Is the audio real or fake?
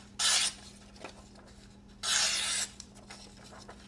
real